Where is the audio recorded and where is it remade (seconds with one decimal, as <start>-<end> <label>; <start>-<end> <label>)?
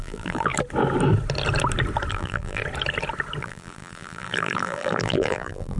0.0-0.5 remade; 0.5-2.1 recorded; 2.1-2.6 remade; 2.6-3.4 recorded; 3.4-5.8 remade